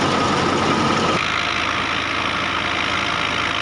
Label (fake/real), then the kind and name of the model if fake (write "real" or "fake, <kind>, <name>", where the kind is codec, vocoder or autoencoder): real